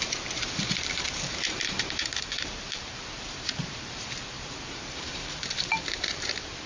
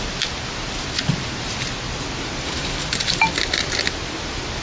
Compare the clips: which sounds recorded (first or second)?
second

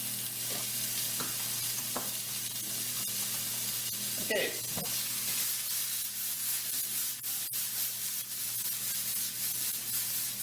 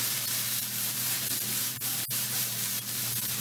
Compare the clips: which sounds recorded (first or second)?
first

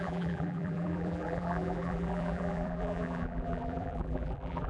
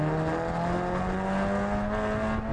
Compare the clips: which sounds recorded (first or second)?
second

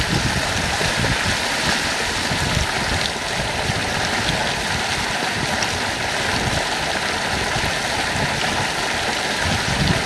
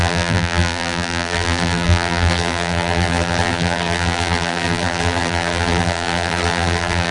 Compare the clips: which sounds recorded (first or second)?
first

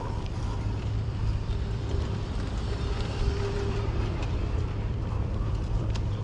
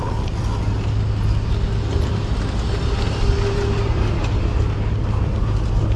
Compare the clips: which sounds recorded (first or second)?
second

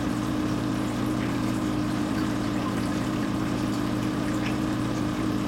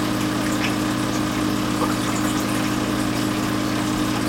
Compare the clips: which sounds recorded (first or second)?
second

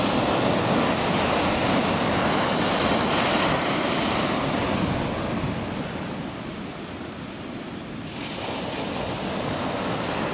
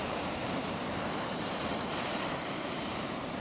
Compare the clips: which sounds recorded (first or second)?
first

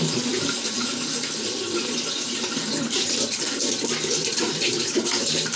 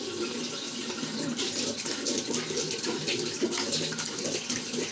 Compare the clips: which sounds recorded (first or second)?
second